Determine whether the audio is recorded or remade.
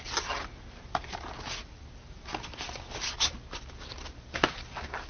recorded